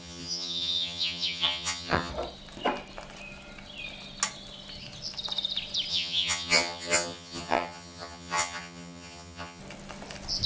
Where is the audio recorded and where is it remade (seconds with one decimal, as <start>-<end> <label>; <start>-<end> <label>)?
0.0-2.1 remade; 2.1-5.9 recorded; 5.9-9.6 remade; 9.6-10.5 recorded